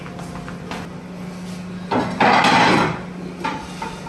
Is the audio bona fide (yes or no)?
yes